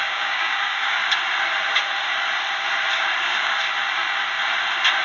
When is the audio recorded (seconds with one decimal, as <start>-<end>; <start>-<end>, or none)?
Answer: 1.0-3.2; 3.6-5.0